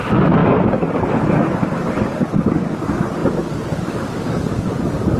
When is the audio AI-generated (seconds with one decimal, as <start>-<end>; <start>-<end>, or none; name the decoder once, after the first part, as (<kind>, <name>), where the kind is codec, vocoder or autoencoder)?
0.0-5.2 (codec, DAC)